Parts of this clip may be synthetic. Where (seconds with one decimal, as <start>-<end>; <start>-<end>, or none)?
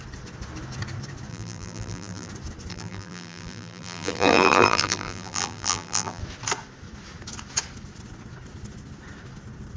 1.3-2.3; 2.7-6.2